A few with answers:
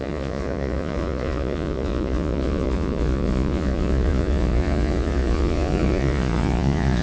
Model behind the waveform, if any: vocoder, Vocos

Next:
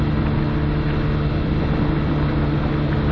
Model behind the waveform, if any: none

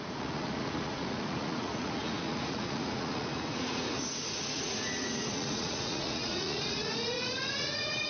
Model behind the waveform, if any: vocoder, Vocos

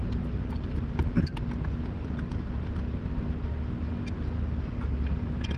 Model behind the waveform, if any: none